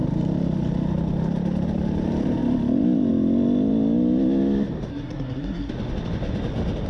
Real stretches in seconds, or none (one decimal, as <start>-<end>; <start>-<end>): 0.0-4.9; 5.7-6.9